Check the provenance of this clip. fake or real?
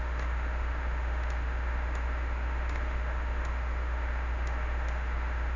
fake